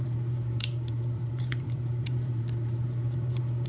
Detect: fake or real fake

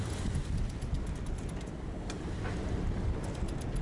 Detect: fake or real real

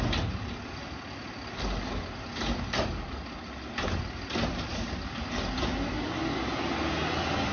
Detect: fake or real real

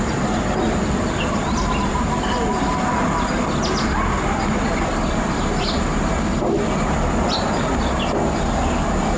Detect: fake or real real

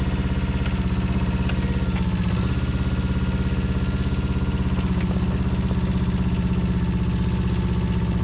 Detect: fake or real real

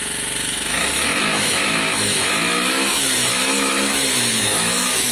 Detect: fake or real fake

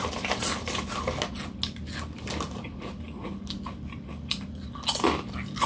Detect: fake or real real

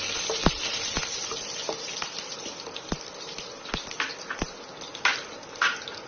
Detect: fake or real real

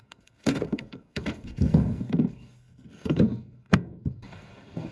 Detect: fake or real fake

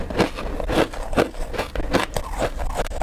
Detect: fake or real real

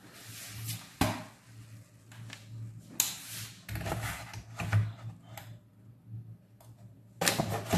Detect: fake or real real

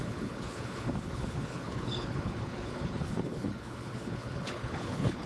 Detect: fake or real fake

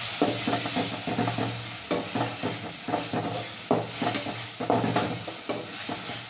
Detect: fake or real real